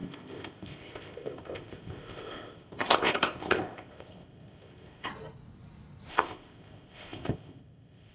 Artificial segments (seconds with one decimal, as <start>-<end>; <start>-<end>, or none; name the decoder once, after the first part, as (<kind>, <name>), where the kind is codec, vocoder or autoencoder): 0.0-5.1 (codec, ZipCodec); 6.1-8.1